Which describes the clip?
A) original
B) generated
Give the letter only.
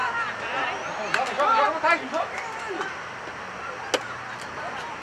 A